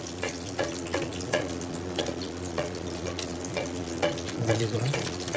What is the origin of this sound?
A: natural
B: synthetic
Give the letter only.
B